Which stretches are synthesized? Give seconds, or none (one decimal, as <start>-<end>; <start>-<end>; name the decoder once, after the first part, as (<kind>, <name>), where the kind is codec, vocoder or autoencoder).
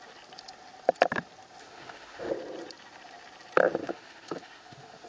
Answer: 1.6-2.3 (autoencoder, DAC-VAE); 3.8-5.1